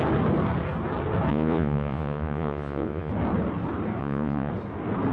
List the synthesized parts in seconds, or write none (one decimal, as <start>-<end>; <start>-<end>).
1.3-3.1; 4.0-4.5